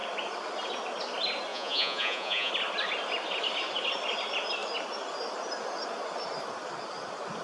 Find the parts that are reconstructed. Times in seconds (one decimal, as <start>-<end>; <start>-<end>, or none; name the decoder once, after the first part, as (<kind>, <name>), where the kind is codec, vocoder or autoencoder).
1.5-2.5 (vocoder, Vocos)